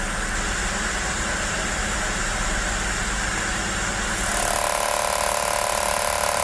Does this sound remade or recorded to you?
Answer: recorded